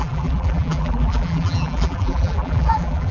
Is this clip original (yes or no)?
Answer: no